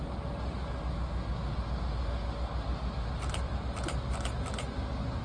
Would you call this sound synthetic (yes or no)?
no